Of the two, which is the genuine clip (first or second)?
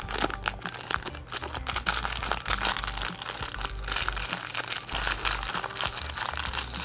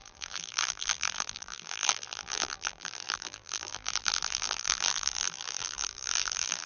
first